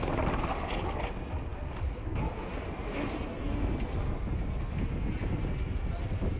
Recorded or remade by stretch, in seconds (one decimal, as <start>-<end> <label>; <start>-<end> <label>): 0.0-6.4 recorded